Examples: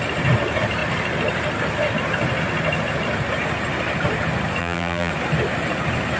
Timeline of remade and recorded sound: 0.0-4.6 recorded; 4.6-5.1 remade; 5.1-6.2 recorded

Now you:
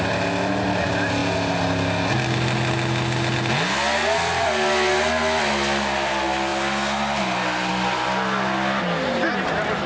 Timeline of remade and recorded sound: 0.0-9.9 recorded

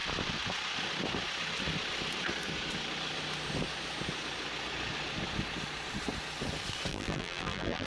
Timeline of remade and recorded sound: 0.0-6.9 recorded; 6.9-7.9 remade

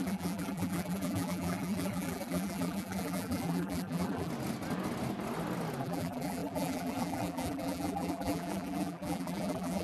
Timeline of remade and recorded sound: 0.0-4.3 remade; 4.3-5.8 recorded; 5.8-9.8 remade